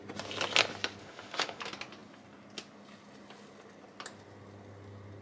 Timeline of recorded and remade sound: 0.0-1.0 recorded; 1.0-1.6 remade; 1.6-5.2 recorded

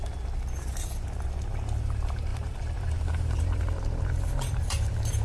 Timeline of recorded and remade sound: 0.0-1.8 recorded; 1.8-5.2 remade

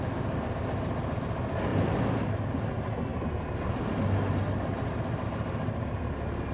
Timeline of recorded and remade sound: 0.0-6.5 recorded

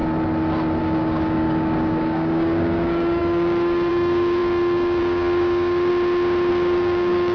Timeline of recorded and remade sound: 0.0-0.8 recorded; 0.8-5.9 remade; 5.9-6.5 recorded; 6.5-7.3 remade

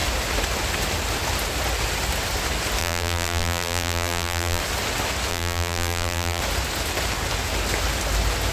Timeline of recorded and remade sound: 0.0-2.8 recorded; 2.8-4.6 remade; 4.6-5.3 recorded; 5.3-6.4 remade; 6.4-8.5 recorded

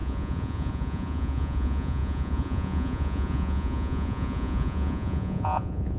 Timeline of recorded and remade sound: 0.0-6.0 remade

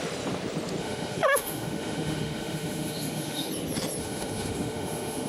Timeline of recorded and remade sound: 0.0-0.8 recorded; 0.8-3.5 remade; 3.5-4.0 recorded; 4.0-5.3 remade